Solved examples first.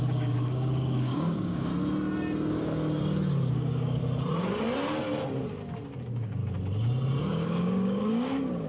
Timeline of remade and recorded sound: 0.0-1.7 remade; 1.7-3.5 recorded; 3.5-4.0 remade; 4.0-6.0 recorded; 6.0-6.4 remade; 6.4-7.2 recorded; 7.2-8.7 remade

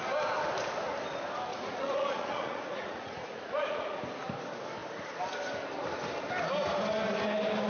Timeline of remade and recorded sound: 0.0-1.5 recorded; 1.5-4.0 remade; 4.0-7.7 recorded

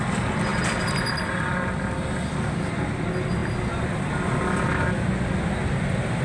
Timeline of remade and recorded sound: 0.0-0.5 recorded; 0.5-1.8 remade; 1.8-3.4 recorded; 3.4-4.1 remade; 4.1-6.2 recorded

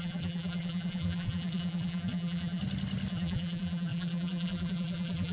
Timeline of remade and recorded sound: 0.0-2.6 remade; 2.6-3.1 recorded; 3.1-5.3 remade

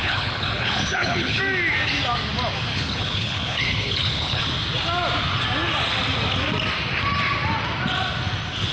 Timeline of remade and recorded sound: 0.0-1.4 remade; 1.4-2.7 recorded; 2.7-4.4 remade; 4.4-8.7 recorded

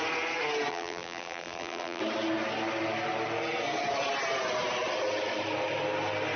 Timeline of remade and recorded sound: 0.0-0.7 recorded; 0.7-2.0 remade; 2.0-6.4 recorded

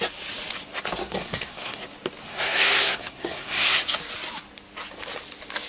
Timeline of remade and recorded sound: 0.0-1.0 recorded; 1.0-1.8 remade; 1.8-2.2 recorded; 2.2-3.8 remade; 3.8-5.7 recorded

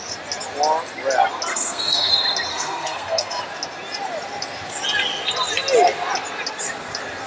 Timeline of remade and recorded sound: 0.0-1.5 recorded; 1.5-2.1 remade; 2.1-2.5 recorded; 2.5-3.4 remade; 3.4-7.3 recorded